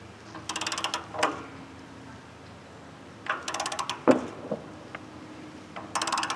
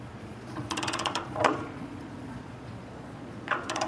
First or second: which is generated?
second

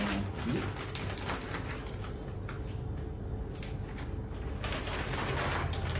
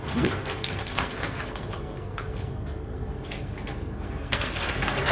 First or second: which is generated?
second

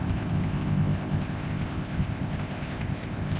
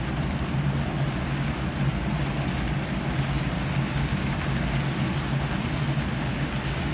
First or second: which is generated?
first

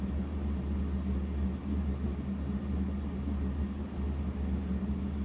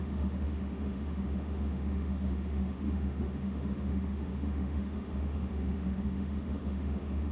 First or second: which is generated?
second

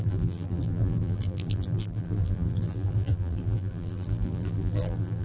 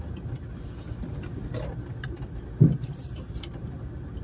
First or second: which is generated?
first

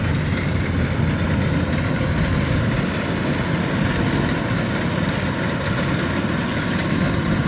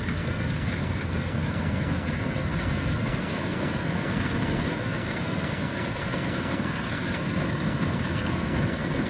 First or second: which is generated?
second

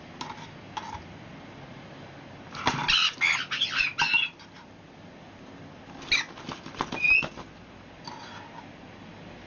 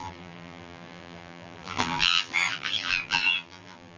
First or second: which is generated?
second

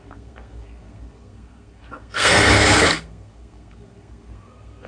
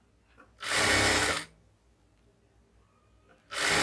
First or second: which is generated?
first